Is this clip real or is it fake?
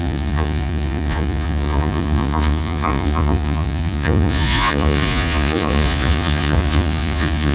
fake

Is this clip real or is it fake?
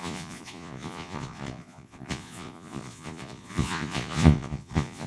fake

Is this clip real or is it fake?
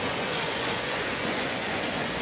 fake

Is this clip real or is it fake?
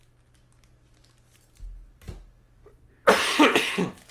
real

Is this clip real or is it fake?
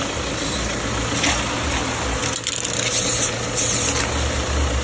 real